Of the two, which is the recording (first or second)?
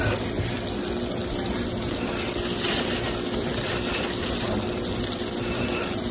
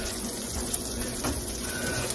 first